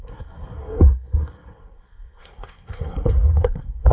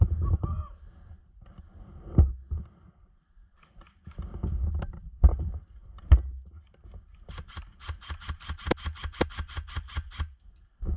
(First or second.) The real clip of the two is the second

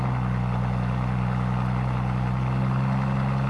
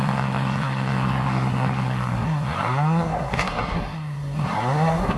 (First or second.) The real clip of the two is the first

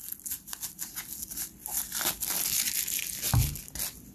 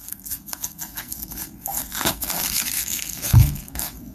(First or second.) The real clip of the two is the first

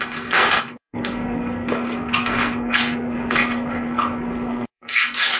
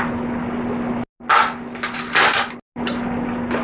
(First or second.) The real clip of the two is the second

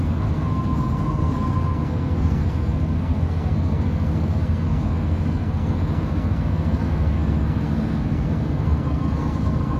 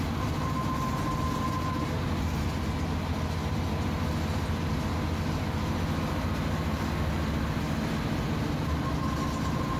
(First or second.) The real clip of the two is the second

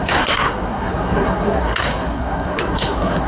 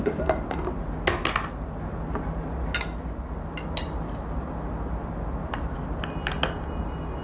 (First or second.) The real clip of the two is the second